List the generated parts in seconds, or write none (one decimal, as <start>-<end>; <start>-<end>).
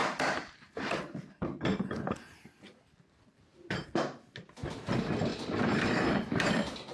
0.0-1.6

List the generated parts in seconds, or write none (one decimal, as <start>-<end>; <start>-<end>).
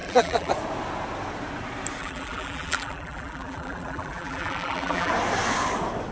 0.0-0.5; 2.0-5.1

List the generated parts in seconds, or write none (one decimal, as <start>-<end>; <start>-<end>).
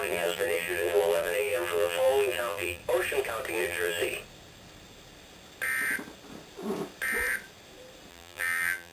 0.0-2.8; 3.5-4.0; 8.1-8.9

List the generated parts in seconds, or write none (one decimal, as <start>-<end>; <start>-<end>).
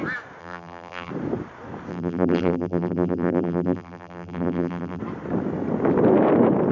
0.4-1.1; 1.9-5.0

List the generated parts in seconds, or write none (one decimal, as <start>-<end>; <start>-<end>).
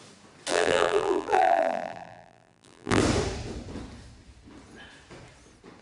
0.5-3.0